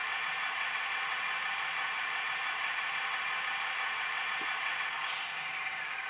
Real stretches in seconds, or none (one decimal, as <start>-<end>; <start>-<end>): 0.0-6.1